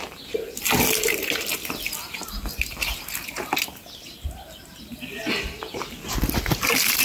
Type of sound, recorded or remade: recorded